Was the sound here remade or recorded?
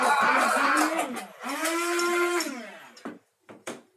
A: recorded